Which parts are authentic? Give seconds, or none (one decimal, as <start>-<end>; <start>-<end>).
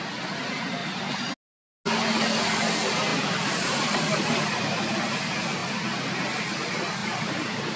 0.0-3.1; 4.6-7.0